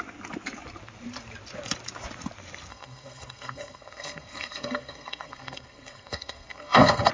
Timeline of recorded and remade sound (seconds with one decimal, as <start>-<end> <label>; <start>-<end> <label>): 0.0-2.7 recorded; 2.7-7.1 remade